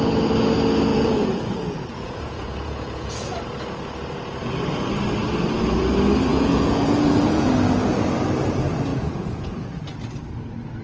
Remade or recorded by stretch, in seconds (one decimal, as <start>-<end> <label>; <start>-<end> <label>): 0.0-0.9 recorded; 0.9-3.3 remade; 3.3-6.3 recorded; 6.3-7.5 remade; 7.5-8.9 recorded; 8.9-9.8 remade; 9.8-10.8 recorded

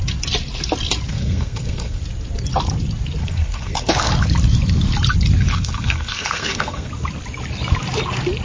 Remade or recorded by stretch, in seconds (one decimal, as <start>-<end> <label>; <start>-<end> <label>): 0.0-1.1 recorded; 1.1-2.0 remade; 2.0-3.2 recorded; 3.2-4.1 remade; 4.1-5.5 recorded; 5.5-6.9 remade; 6.9-8.4 recorded

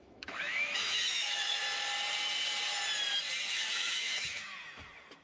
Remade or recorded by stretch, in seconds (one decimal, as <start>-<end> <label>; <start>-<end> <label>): 0.0-1.6 remade; 1.6-3.5 recorded; 3.5-4.5 remade; 4.5-5.2 recorded